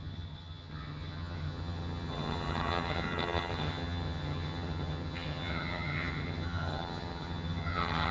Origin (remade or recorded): remade